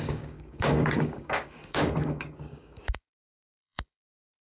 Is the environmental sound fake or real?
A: fake